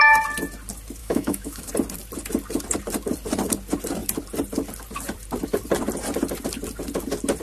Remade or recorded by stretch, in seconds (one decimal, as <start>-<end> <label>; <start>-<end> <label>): 0.0-1.0 recorded; 1.0-1.7 remade; 1.7-7.4 recorded

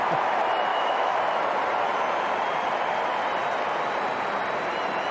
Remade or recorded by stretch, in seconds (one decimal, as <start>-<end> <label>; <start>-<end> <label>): 0.0-0.7 recorded; 0.7-1.2 remade; 1.2-5.1 recorded

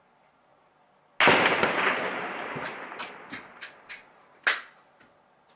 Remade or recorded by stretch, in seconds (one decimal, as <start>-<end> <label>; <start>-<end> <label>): 0.0-5.6 recorded

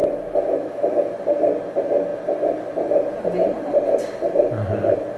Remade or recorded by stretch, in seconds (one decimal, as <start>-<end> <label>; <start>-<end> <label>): 0.0-0.9 remade; 0.9-5.2 recorded

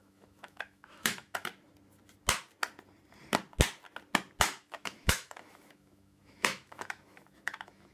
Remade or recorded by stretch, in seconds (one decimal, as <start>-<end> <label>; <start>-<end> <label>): 0.0-1.5 remade; 1.5-4.4 recorded; 4.4-7.9 remade